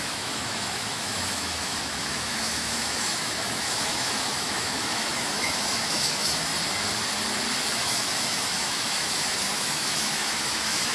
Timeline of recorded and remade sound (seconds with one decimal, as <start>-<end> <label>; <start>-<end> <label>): 0.0-6.5 remade; 6.5-7.7 recorded; 7.7-10.9 remade